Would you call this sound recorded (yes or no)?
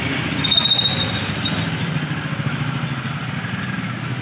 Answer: yes